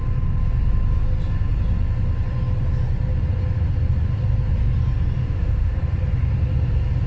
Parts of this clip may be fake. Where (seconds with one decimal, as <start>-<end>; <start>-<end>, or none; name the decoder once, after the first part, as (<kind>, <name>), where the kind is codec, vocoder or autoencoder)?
5.2-5.8 (autoencoder, DAC-VAE)